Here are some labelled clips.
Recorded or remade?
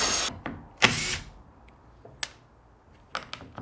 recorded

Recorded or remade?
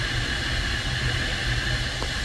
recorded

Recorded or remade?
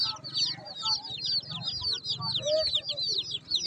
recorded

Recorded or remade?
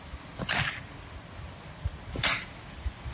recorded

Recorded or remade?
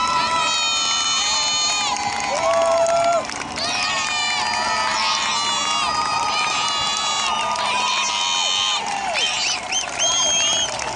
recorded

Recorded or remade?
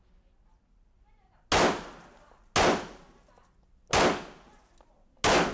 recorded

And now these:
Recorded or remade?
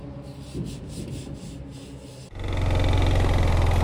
recorded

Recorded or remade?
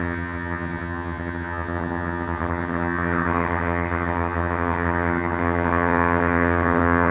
remade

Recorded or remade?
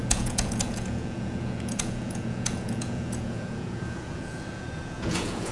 remade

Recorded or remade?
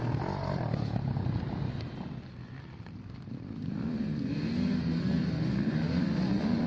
recorded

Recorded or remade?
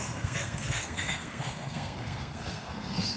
remade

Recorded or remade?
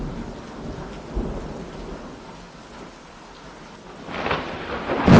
recorded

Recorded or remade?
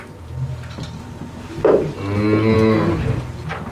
recorded